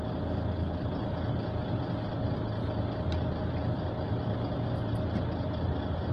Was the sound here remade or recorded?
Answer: recorded